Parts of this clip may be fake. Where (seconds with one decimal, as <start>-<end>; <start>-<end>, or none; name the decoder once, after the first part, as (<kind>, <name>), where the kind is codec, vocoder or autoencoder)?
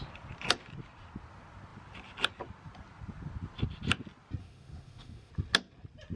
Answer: 4.4-5.3 (autoencoder, DAC-VAE)